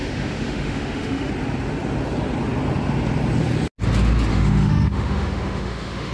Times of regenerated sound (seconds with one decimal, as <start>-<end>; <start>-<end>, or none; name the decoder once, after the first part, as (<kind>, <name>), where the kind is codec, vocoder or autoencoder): 0.0-1.3 (autoencoder, DAC-VAE); 4.3-6.1